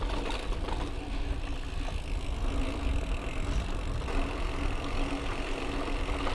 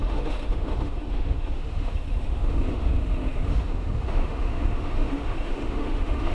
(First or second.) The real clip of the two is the first